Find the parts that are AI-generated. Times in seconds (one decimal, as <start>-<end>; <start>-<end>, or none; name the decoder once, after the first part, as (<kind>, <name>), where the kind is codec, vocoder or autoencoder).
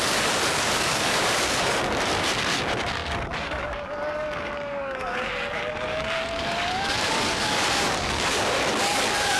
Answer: 0.0-9.4 (codec, DAC)